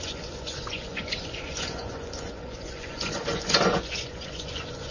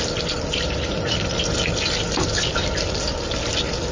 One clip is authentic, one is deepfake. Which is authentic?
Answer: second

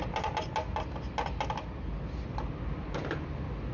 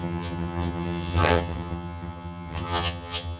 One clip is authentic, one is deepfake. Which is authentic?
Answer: first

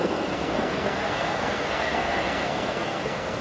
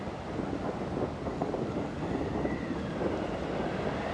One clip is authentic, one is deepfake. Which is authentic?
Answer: second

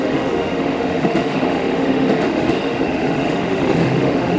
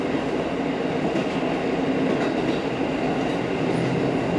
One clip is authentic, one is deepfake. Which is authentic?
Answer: second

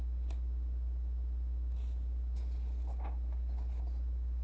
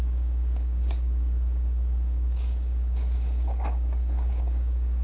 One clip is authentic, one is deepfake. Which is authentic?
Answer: first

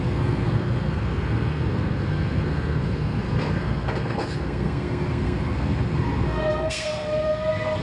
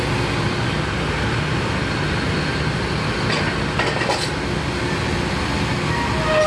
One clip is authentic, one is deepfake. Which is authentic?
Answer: second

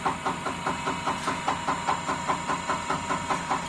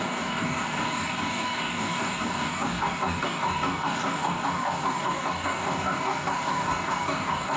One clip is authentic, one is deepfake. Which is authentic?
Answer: first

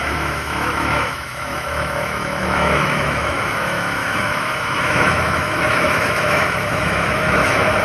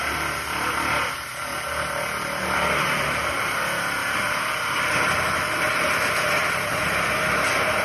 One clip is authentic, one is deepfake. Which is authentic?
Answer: second